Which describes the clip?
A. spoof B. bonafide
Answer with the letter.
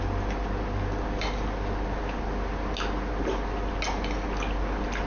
B